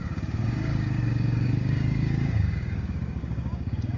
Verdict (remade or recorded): remade